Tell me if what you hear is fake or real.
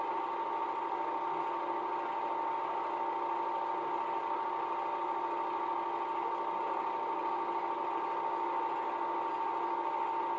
real